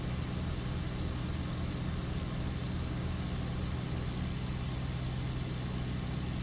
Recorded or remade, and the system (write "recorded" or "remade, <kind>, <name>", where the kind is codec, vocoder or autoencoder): recorded